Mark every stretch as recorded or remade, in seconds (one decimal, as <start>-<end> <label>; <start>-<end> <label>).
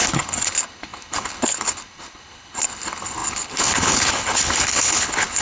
0.0-5.4 remade